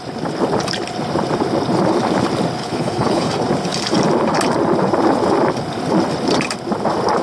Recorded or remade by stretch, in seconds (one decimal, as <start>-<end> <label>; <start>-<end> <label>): 0.0-2.6 recorded; 2.6-3.3 remade; 3.3-7.2 recorded